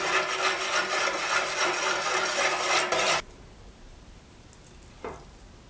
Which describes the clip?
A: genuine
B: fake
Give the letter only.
A